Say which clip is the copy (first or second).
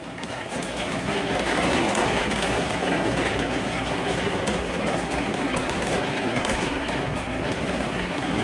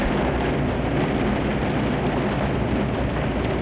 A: first